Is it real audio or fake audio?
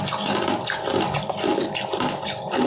real